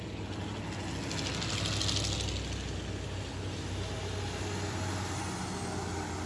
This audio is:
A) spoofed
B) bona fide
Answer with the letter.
B